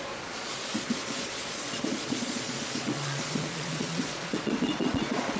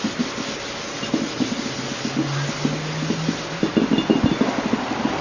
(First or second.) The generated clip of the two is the first